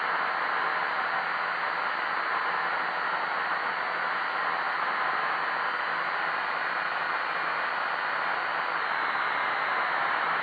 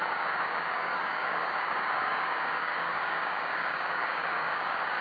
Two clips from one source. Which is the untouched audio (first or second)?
first